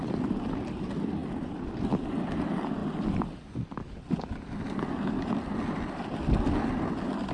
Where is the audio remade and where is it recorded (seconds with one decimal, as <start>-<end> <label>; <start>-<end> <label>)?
0.0-7.3 recorded